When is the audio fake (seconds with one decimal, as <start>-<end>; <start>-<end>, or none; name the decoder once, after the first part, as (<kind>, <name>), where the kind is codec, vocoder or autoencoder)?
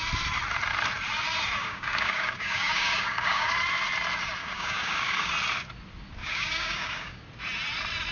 1.6-3.5 (codec, DAC); 4.4-5.3; 6.2-7.2